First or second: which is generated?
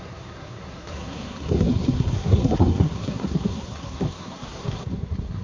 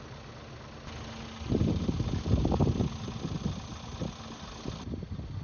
first